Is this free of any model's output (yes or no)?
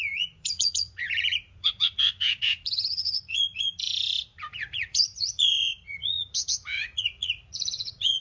no